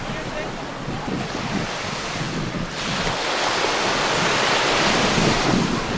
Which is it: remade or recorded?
remade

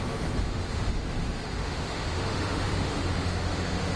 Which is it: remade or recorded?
remade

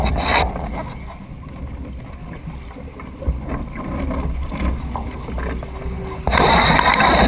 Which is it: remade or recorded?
recorded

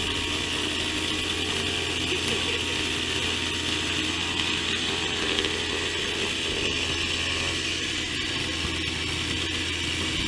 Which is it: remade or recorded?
recorded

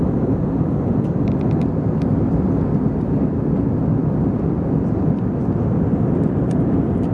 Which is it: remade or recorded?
remade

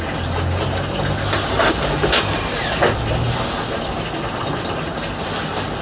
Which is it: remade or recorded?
recorded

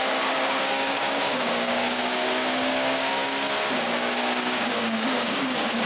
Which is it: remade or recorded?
remade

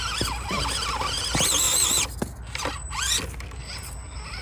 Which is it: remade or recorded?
recorded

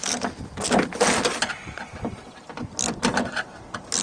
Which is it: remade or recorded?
recorded